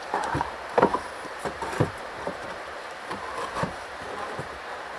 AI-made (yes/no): yes